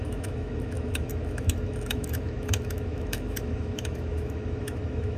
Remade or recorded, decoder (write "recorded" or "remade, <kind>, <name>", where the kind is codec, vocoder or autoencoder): remade, autoencoder, DAC-VAE